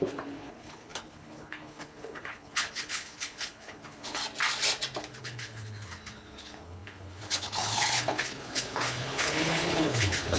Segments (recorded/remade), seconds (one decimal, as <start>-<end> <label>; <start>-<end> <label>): 0.0-4.2 remade; 4.2-5.2 recorded; 5.2-10.4 remade